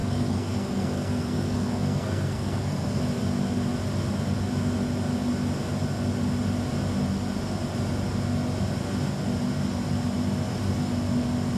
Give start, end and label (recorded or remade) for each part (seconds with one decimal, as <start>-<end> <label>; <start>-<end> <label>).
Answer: 0.0-3.0 remade; 3.0-11.6 recorded